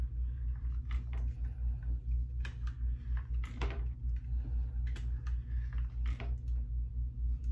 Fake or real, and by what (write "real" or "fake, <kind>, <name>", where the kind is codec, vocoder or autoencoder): real